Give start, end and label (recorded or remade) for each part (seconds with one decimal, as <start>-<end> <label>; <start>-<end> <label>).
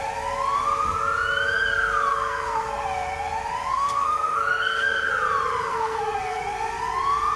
0.0-2.1 recorded; 2.1-2.8 remade; 2.8-3.7 recorded; 3.7-5.1 remade; 5.1-5.7 recorded; 5.7-6.4 remade; 6.4-7.4 recorded